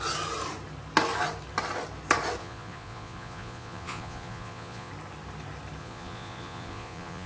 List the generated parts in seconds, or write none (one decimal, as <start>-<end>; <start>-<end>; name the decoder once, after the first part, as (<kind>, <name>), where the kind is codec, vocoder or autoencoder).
2.4-4.9 (vocoder, Vocos); 5.8-7.3